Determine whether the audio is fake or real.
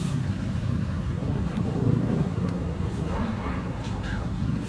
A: fake